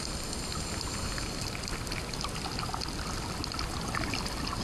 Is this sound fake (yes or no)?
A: no